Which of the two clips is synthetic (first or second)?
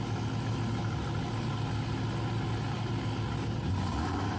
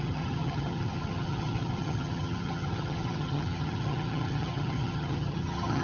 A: second